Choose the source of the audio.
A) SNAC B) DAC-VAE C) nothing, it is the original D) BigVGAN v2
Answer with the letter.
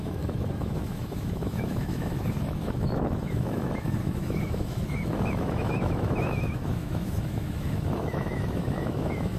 B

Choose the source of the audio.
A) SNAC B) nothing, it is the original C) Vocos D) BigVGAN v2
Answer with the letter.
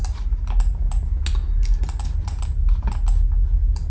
B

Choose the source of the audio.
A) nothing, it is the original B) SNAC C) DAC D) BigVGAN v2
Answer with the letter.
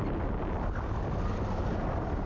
A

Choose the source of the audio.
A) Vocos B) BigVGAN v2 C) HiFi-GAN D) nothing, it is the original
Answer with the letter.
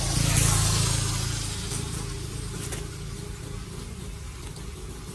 D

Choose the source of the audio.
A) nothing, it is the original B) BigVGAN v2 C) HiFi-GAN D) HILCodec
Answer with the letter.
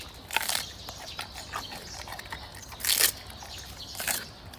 A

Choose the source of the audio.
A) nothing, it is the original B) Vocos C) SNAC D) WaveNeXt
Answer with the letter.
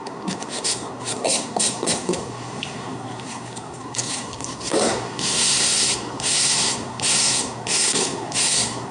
C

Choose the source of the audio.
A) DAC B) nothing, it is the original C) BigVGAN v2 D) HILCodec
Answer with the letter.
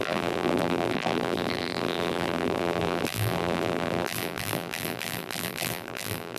C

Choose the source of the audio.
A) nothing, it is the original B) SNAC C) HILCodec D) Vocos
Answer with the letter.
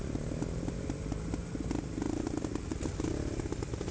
A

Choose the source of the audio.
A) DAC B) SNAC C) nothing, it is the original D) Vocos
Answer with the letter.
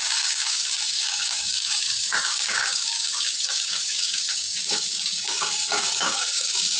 A